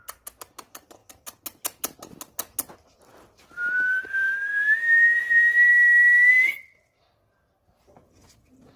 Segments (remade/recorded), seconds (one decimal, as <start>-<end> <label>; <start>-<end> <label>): 0.0-5.7 recorded; 5.7-6.3 remade; 6.3-8.8 recorded